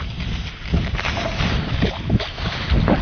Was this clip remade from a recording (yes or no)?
no